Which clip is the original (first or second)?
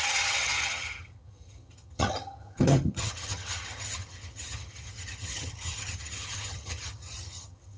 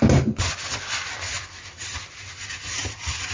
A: second